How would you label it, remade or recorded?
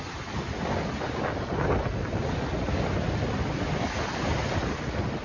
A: recorded